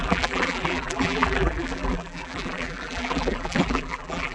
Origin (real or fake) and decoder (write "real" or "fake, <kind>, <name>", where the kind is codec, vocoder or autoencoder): fake, vocoder, BigVGAN v2